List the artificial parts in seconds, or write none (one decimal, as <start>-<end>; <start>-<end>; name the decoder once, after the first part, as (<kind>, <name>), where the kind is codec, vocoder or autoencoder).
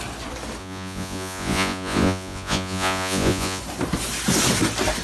0.6-3.6 (vocoder, Vocos)